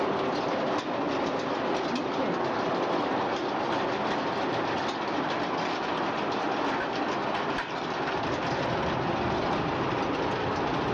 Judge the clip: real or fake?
real